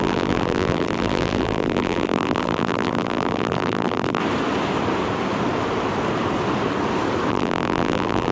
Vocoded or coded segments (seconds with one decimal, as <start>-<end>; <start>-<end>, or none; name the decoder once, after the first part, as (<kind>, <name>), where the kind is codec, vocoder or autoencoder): 0.0-4.2 (vocoder, BigVGAN v2); 7.3-8.3